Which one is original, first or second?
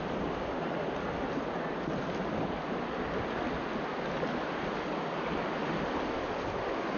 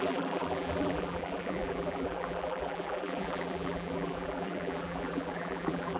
first